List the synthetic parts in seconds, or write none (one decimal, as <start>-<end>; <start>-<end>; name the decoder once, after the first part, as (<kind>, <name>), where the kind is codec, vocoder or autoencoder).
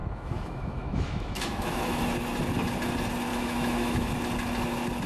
0.0-2.0 (autoencoder, DAC-VAE); 3.3-4.1